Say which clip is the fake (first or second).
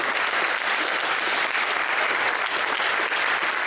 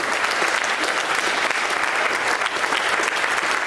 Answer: first